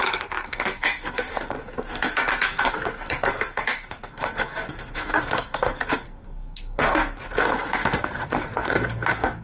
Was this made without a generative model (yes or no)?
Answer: no